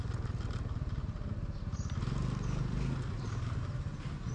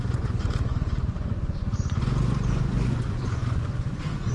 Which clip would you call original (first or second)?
first